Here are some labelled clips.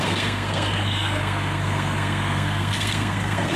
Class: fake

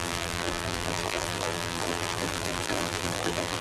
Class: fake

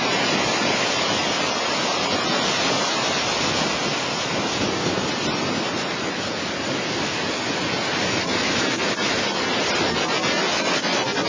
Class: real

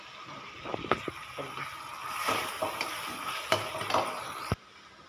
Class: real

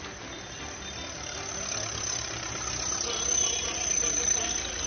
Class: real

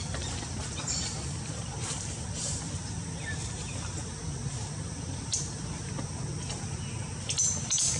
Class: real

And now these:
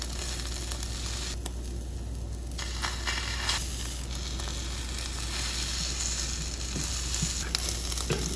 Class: real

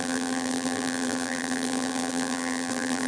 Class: fake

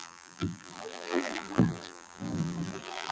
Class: fake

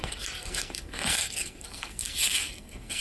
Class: fake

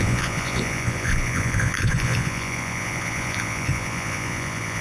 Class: fake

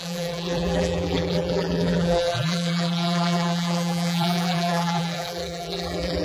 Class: fake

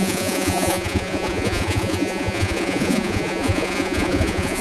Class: fake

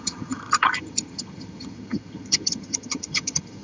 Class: fake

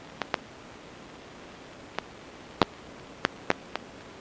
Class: real